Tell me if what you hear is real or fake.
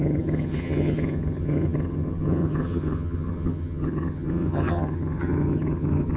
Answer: fake